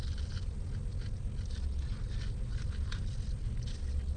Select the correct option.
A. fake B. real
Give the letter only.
B